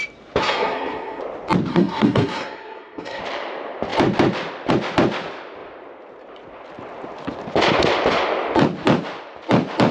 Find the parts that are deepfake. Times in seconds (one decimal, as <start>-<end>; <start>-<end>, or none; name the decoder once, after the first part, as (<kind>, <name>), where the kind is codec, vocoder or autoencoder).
0.4-1.2 (codec, SNAC); 1.7-3.2